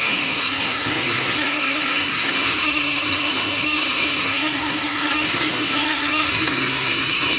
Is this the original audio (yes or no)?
no